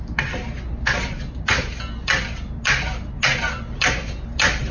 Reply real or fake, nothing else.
real